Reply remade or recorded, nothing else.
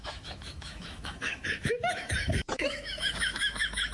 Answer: remade